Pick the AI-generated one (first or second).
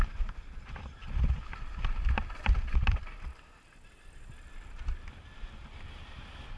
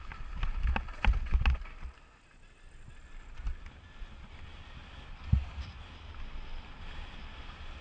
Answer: first